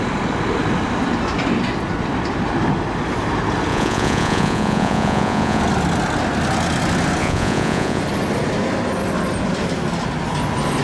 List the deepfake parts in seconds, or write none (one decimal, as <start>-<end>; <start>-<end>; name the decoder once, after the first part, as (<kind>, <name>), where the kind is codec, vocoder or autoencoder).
3.7-5.6 (vocoder, Vocos); 7.2-8.0